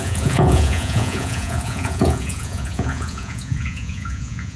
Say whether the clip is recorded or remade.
remade